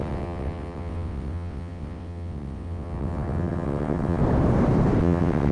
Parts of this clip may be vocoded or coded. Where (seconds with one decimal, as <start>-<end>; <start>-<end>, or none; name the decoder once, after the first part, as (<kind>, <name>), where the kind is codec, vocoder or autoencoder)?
0.0-4.2 (vocoder, WaveNeXt); 5.0-5.5